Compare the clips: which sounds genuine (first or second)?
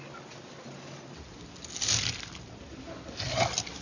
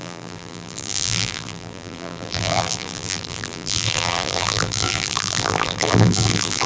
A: first